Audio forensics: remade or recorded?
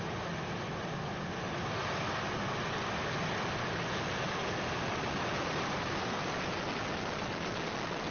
recorded